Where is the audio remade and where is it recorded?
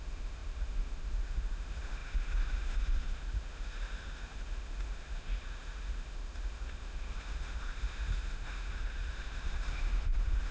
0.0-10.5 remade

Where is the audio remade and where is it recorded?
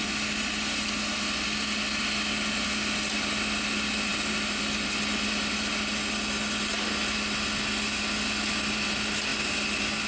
0.0-10.1 recorded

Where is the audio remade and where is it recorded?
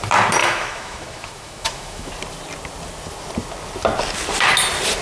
0.0-0.4 recorded; 0.4-2.1 remade; 2.1-5.0 recorded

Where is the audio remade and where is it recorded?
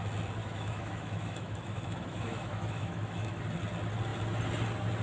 0.0-0.4 recorded; 0.4-3.4 remade; 3.4-5.0 recorded